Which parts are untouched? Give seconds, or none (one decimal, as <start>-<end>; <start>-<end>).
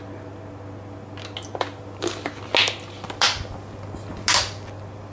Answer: 0.0-5.1